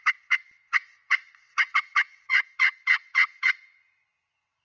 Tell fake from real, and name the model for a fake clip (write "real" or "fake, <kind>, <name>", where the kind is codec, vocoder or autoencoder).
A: fake, vocoder, WaveNeXt